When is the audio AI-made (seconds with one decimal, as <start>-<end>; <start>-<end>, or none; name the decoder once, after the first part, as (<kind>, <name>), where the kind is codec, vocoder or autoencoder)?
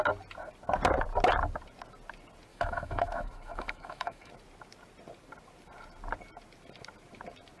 2.5-4.3 (autoencoder, DAC-VAE)